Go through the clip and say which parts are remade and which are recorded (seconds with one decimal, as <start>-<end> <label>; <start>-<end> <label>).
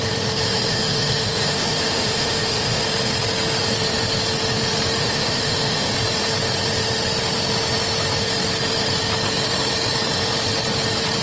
0.0-0.7 recorded; 0.7-2.8 remade; 2.8-5.0 recorded; 5.0-5.9 remade; 5.9-11.2 recorded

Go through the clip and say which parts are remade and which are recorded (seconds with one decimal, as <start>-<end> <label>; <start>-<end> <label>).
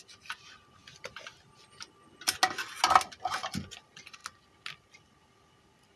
0.0-6.0 recorded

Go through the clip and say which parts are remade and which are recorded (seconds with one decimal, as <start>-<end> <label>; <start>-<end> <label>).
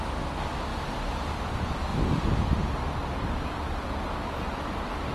0.0-5.1 recorded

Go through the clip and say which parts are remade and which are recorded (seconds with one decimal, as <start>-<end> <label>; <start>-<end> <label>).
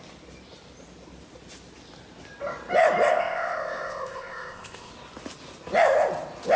0.0-3.1 recorded; 3.1-4.9 remade; 4.9-6.6 recorded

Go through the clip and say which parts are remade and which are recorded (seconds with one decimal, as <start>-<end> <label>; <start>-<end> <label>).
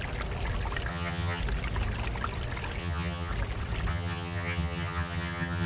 0.0-0.9 recorded; 0.9-1.4 remade; 1.4-2.8 recorded; 2.8-3.3 remade; 3.3-3.9 recorded; 3.9-5.7 remade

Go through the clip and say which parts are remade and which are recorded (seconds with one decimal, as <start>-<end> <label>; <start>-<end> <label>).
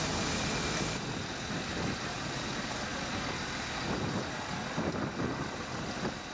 0.0-6.3 recorded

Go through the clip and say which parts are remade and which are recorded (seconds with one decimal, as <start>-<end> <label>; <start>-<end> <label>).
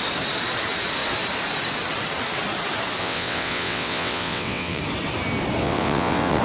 0.0-3.0 recorded; 3.0-4.8 remade; 4.8-5.6 recorded; 5.6-6.4 remade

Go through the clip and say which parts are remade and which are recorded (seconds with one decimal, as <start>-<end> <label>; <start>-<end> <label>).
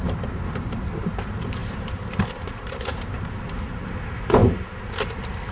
0.0-4.4 remade; 4.4-5.0 recorded; 5.0-5.5 remade